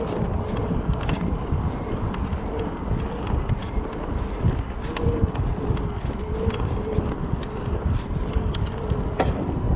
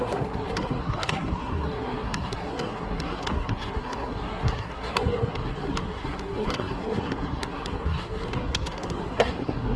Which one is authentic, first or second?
first